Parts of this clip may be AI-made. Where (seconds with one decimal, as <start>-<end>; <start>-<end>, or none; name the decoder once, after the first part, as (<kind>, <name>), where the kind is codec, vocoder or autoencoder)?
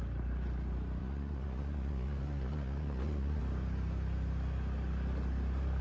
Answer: 1.0-3.4 (vocoder, Vocos)